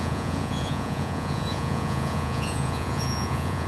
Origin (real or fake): fake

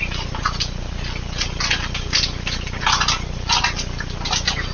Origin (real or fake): real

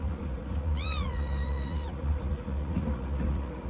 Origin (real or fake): fake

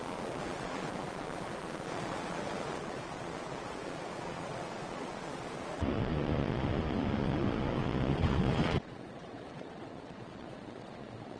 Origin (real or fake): fake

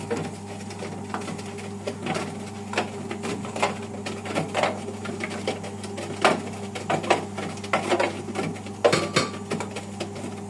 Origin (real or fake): real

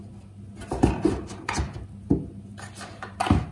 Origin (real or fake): real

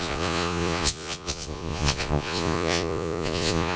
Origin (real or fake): fake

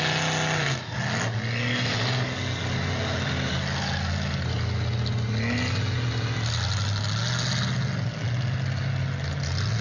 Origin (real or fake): real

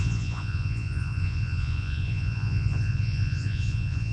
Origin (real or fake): fake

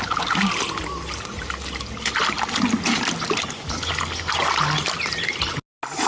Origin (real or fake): real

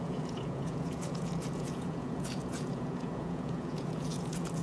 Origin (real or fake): fake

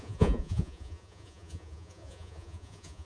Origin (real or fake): fake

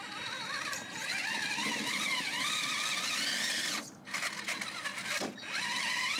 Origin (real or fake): real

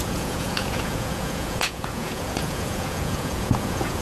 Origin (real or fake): fake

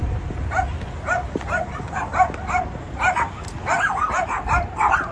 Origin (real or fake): real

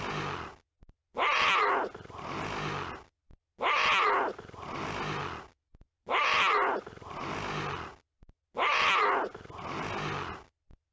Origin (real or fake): real